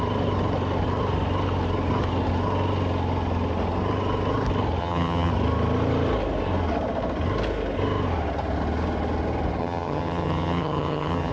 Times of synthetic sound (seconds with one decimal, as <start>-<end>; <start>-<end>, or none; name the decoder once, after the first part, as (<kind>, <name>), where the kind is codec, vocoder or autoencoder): 4.8-5.3 (vocoder, HiFi-GAN); 9.6-11.3